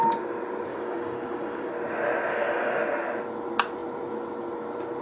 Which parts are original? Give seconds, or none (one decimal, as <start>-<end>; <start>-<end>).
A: 0.0-0.7; 1.7-2.3; 2.8-5.0